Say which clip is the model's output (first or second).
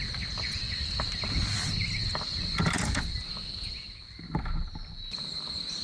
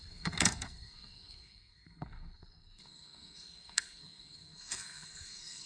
second